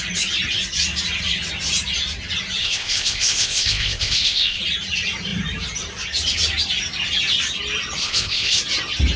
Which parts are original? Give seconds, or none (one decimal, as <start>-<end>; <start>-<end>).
0.0-2.6; 4.6-8.0; 8.6-9.2